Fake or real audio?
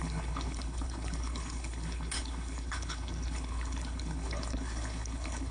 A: fake